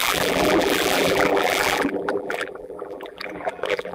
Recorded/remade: remade